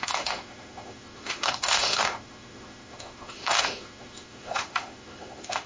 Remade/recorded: remade